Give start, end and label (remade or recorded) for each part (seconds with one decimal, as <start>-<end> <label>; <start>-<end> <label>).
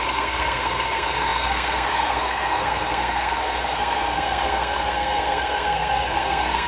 0.0-6.7 remade